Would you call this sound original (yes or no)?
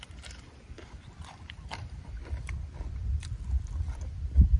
no